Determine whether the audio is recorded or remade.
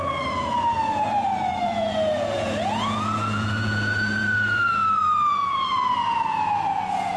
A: remade